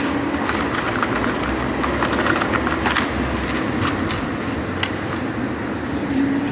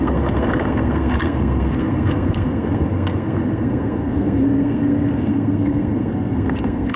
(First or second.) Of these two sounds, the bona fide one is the first